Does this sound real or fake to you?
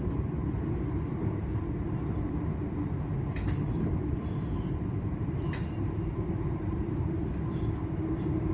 fake